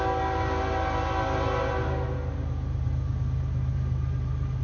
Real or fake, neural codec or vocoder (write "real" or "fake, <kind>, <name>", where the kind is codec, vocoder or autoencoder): real